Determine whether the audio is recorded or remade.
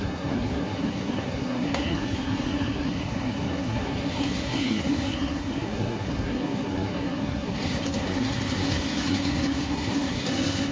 remade